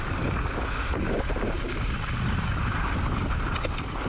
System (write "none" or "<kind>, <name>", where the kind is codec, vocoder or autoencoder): none